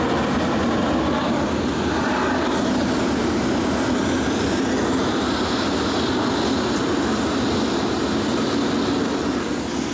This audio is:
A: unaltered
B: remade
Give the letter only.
A